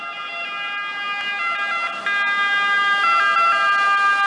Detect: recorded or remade recorded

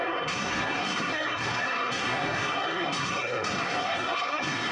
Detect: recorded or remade remade